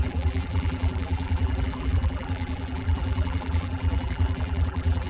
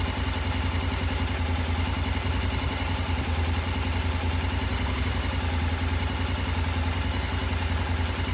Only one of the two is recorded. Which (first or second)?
second